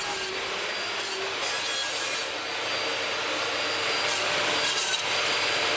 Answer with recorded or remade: recorded